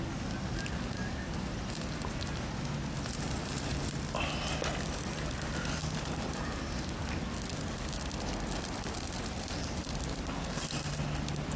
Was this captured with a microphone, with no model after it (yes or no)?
yes